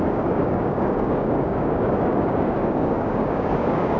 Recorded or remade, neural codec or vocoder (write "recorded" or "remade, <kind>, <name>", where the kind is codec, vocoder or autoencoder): remade, codec, DAC